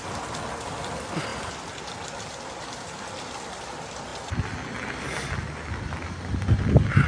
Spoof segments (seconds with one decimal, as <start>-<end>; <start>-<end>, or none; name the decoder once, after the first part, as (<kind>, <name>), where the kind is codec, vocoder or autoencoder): none